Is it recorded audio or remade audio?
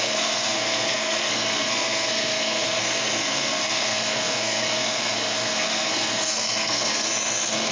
remade